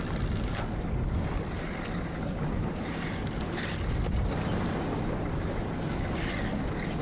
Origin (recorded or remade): recorded